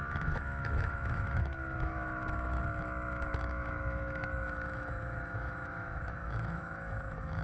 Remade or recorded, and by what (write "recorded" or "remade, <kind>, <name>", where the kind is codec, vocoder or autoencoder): remade, autoencoder, DAC-VAE